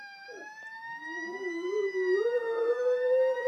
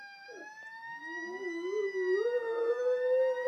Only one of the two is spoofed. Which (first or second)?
first